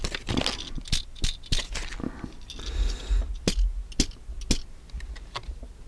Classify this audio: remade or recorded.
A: recorded